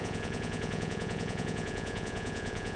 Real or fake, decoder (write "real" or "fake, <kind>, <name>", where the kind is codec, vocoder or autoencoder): fake, vocoder, Vocos